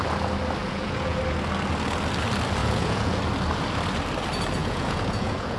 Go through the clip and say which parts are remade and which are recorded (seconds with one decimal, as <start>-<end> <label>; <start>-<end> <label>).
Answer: 0.0-0.6 recorded; 0.6-1.2 remade; 1.2-2.6 recorded; 2.6-3.2 remade; 3.2-4.6 recorded; 4.6-5.6 remade